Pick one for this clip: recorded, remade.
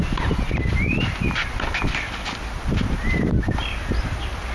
remade